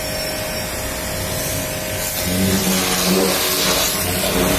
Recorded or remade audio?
recorded